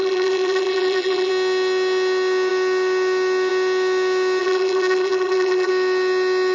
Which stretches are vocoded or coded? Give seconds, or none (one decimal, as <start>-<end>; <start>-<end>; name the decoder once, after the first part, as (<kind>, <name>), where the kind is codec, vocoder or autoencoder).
0.0-1.3 (vocoder, BigVGAN v2); 4.4-5.7